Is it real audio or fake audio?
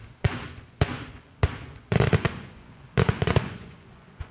fake